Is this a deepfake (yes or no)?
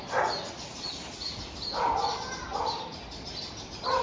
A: no